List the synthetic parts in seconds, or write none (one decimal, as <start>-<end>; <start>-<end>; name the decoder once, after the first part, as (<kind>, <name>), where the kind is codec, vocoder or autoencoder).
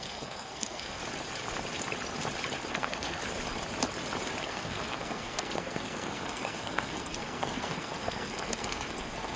0.0-1.0 (codec, SNAC); 2.7-3.2; 4.4-9.4